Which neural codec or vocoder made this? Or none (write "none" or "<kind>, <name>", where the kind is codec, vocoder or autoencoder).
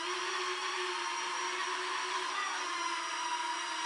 none